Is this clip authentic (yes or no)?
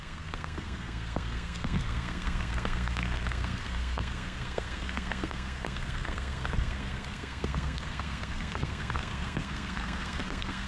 no